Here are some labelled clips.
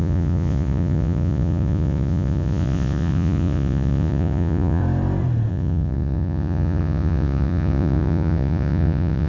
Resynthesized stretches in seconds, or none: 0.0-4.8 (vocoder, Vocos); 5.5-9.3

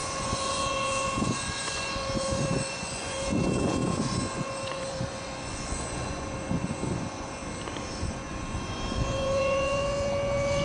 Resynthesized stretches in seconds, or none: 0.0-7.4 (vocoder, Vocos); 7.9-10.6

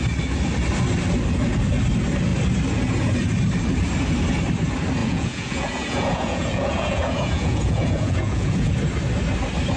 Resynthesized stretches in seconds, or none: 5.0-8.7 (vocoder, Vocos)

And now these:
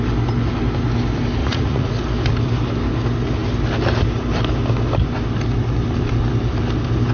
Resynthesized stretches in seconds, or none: 1.4-1.9 (vocoder, Vocos)